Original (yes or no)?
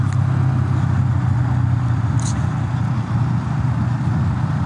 yes